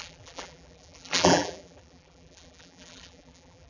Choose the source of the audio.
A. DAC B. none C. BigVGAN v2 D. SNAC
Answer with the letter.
C